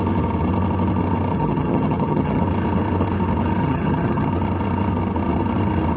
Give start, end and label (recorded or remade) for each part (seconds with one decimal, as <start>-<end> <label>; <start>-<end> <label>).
0.0-1.3 recorded; 1.3-2.4 remade; 2.4-3.6 recorded; 3.6-4.3 remade; 4.3-6.0 recorded